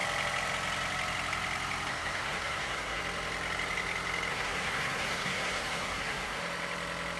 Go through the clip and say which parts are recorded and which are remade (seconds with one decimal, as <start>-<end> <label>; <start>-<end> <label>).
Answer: 0.0-1.9 recorded; 1.9-3.0 remade; 3.0-4.3 recorded; 4.3-6.4 remade; 6.4-7.2 recorded